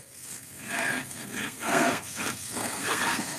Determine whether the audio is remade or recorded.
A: remade